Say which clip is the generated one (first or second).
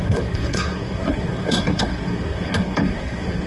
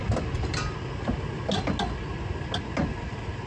first